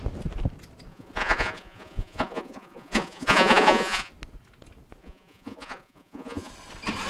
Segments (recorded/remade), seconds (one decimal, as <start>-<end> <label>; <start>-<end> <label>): 0.0-0.9 recorded; 0.9-4.1 remade; 4.1-5.0 recorded; 5.0-6.5 remade; 6.5-7.1 recorded